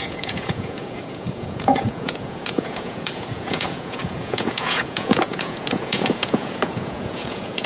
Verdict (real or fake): fake